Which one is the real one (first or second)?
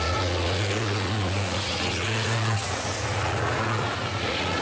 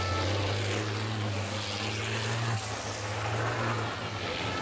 second